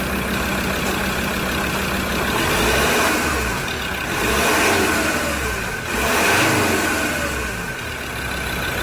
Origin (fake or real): real